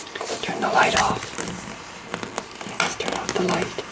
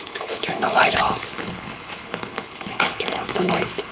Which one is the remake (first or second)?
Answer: second